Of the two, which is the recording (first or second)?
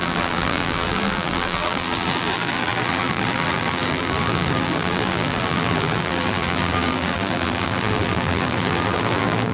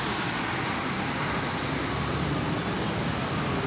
second